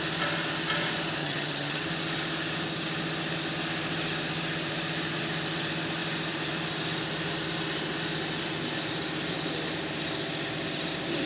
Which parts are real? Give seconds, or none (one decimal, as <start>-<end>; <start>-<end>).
0.0-1.2; 1.8-11.3